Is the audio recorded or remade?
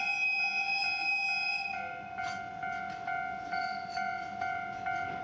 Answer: recorded